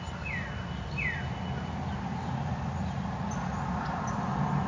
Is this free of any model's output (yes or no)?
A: yes